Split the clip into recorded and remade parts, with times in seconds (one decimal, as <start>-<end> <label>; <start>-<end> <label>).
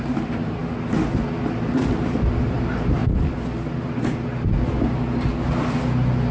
0.0-0.6 remade; 0.6-1.8 recorded; 1.8-3.0 remade; 3.0-6.3 recorded